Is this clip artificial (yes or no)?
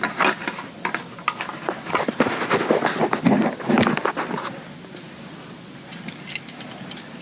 no